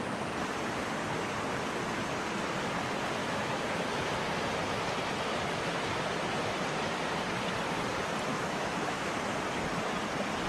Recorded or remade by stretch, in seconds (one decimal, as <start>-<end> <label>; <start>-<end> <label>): 0.0-3.2 recorded; 3.2-3.9 remade; 3.9-8.3 recorded; 8.3-9.0 remade; 9.0-10.5 recorded